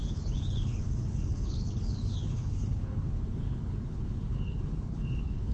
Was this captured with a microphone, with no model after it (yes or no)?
no